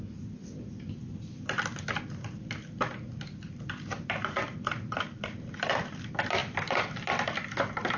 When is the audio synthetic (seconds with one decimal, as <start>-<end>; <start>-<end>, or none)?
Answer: 6.4-7.3